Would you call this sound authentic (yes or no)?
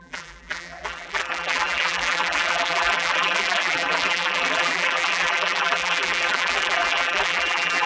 no